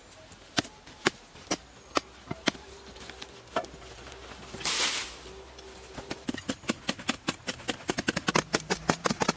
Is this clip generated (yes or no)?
no